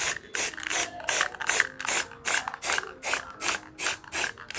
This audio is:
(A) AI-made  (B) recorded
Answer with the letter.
B